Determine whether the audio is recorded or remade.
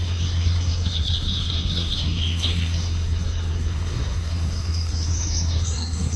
remade